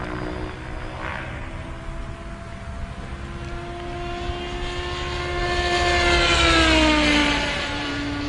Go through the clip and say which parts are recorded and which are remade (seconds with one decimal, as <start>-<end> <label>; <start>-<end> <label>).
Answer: 0.0-1.1 recorded; 1.1-1.8 remade; 1.8-7.2 recorded; 7.2-7.9 remade; 7.9-8.3 recorded